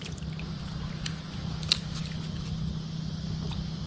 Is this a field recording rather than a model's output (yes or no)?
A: yes